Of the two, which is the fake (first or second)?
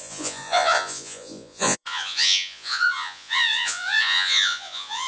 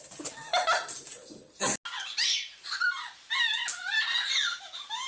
first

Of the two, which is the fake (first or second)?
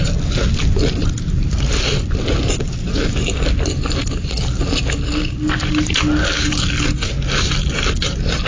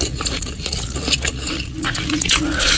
second